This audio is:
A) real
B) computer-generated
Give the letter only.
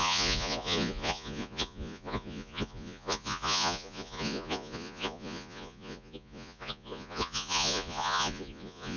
B